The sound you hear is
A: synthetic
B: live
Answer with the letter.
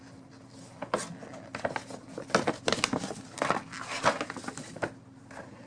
B